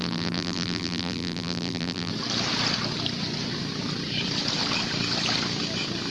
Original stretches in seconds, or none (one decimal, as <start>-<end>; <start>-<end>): 2.1-6.1